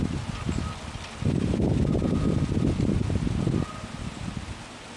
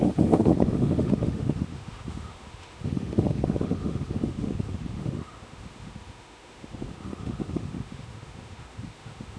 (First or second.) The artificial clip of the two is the second